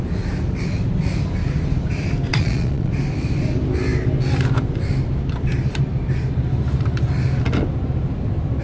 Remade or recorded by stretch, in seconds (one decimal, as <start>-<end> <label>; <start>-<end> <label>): 0.0-2.3 recorded; 2.3-2.9 remade; 2.9-8.6 recorded